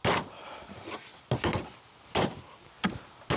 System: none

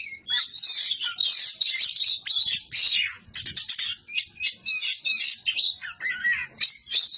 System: none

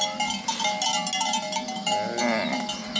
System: none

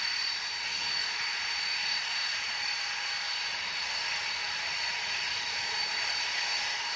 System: none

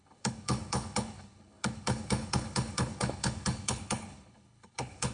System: codec, HILCodec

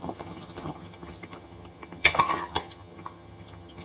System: vocoder, HiFi-GAN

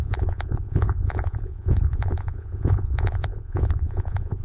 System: vocoder, Vocos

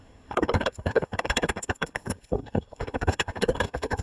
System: codec, SNAC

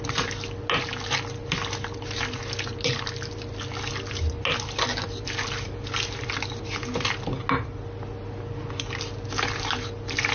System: none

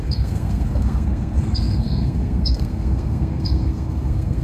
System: codec, SNAC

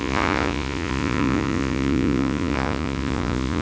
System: vocoder, Vocos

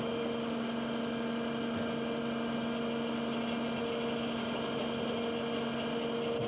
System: none